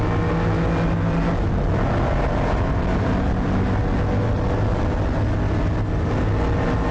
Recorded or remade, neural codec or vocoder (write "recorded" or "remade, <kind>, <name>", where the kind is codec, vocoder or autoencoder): recorded